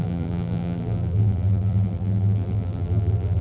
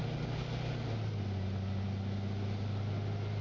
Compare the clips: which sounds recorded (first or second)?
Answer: second